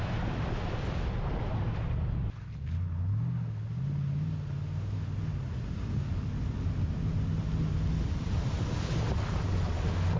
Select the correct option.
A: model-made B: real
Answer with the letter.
B